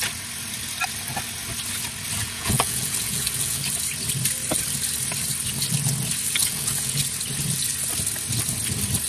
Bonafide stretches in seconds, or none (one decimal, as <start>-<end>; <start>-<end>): 0.0-2.2; 3.6-6.4; 7.0-9.1